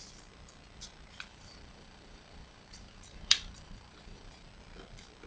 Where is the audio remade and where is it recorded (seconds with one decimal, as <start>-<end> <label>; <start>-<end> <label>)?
0.0-1.3 recorded; 1.3-4.5 remade; 4.5-5.3 recorded